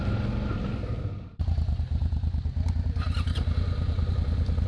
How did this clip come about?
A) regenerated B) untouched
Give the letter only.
B